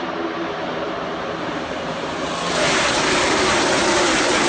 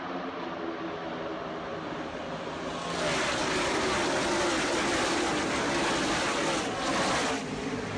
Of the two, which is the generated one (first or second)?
first